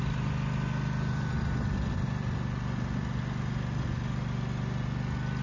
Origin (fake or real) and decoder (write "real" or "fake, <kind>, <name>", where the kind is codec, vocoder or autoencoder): real